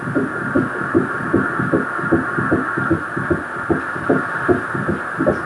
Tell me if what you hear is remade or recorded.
recorded